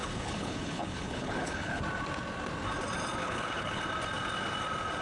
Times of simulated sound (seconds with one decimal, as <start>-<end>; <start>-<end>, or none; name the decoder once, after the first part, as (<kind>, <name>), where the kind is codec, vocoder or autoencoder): 0.0-1.8 (codec, HILCodec); 3.2-3.8